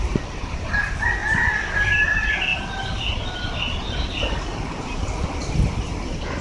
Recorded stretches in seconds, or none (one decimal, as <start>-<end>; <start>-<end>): 0.0-6.4